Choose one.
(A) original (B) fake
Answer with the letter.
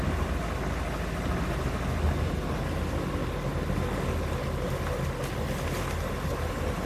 A